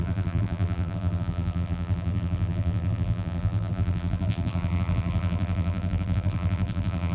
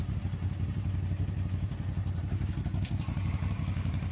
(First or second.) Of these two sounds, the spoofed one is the first